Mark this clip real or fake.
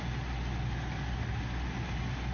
real